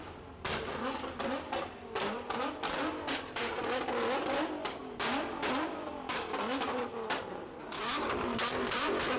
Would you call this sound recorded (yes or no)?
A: yes